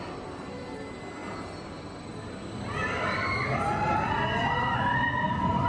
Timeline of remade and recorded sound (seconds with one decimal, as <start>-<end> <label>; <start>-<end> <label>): 0.0-5.7 recorded